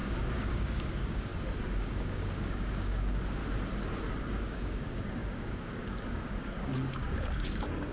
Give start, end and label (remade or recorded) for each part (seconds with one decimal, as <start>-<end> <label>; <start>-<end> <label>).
0.0-1.3 remade; 1.3-1.8 recorded; 1.8-3.4 remade; 3.4-4.1 recorded; 4.1-7.9 remade